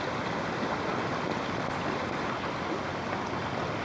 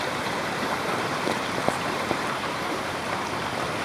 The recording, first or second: first